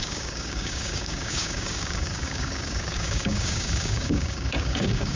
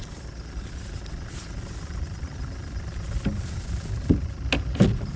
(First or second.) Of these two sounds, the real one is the second